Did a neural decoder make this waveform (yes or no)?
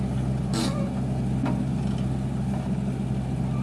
no